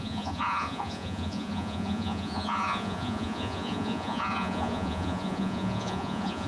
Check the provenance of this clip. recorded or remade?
remade